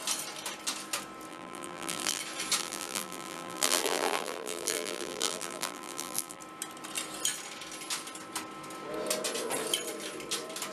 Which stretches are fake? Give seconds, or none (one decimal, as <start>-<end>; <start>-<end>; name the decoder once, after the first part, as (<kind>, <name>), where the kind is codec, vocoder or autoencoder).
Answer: 1.3-2.2 (vocoder, BigVGAN v2); 2.6-6.4

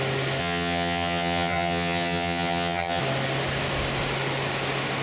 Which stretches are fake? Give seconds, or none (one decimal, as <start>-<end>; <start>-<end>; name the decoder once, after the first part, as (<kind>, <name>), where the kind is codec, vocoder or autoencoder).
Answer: 0.4-3.0 (vocoder, HiFi-GAN)

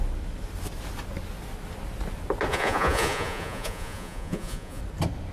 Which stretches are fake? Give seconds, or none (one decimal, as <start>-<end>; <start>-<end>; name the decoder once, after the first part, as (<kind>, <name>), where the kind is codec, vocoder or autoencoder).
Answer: 2.5-4.8 (vocoder, Vocos)

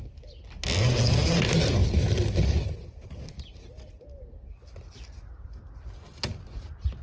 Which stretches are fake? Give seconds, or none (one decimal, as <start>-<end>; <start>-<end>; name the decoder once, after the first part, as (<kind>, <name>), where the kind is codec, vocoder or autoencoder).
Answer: none

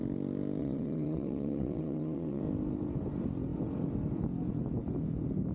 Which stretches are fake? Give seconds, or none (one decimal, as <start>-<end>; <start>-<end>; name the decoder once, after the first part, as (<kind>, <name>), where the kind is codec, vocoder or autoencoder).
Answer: 0.6-2.4 (vocoder, WaveNeXt)

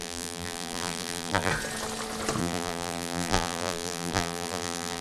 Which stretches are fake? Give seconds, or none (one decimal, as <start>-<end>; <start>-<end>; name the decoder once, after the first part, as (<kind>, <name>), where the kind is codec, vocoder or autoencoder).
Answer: 0.0-1.5 (vocoder, BigVGAN v2); 2.4-5.0

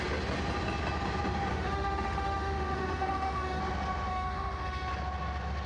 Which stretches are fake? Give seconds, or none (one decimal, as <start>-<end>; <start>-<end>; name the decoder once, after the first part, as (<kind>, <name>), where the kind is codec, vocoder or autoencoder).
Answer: 1.5-3.6 (autoencoder, DAC-VAE); 4.1-4.9